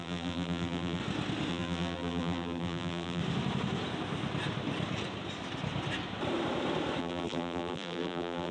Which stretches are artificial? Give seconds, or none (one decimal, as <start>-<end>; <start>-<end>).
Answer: 0.0-1.0; 1.5-3.2; 7.0-8.5